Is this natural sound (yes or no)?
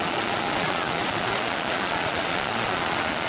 no